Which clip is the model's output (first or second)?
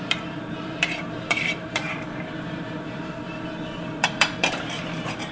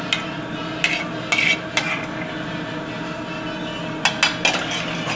first